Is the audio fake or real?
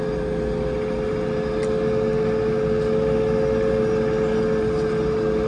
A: real